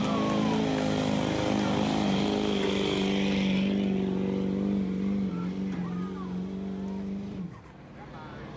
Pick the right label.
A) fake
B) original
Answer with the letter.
B